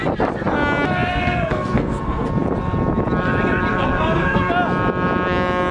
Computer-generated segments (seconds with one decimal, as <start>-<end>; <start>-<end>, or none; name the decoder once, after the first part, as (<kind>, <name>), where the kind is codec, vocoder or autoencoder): 1.1-2.3 (codec, SNAC); 3.7-4.5